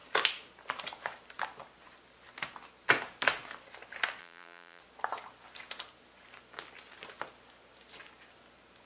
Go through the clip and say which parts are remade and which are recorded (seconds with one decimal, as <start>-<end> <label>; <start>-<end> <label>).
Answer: 0.0-4.2 recorded; 4.2-4.8 remade; 4.8-8.9 recorded